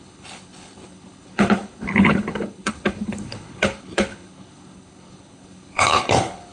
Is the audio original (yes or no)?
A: no